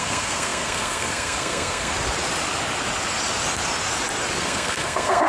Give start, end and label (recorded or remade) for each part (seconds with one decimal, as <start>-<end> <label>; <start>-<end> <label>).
0.0-1.9 remade; 1.9-4.4 recorded; 4.4-5.3 remade